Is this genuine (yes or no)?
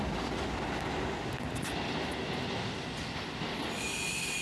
yes